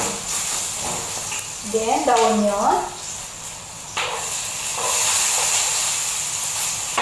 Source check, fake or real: real